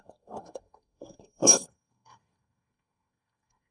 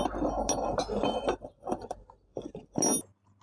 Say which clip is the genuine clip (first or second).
second